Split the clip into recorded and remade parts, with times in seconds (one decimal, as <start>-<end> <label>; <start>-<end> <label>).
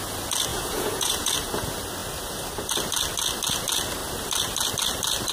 0.0-0.5 recorded; 0.5-1.3 remade; 1.3-5.3 recorded